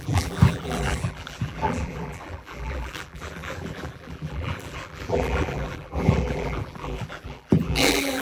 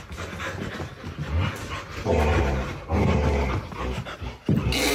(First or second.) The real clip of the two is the second